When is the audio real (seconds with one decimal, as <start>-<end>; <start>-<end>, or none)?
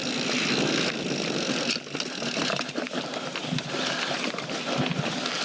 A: 0.0-5.4